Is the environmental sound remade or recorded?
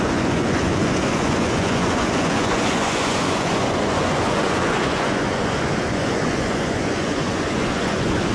remade